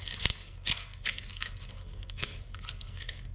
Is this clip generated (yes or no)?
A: yes